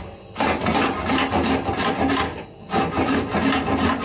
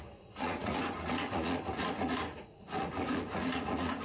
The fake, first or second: second